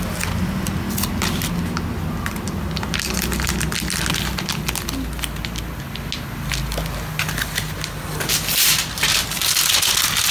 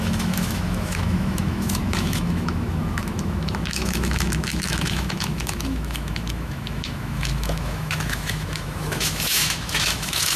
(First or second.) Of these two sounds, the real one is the first